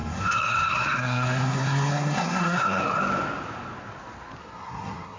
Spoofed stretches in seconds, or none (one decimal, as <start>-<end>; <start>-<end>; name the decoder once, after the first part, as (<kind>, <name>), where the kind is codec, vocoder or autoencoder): 0.0-3.0 (codec, SNAC); 4.4-5.2